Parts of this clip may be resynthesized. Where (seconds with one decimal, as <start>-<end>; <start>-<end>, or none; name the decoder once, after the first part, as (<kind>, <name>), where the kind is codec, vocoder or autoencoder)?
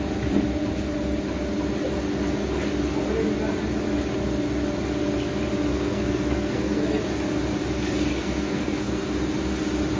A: 5.7-7.0 (codec, SNAC); 8.1-9.0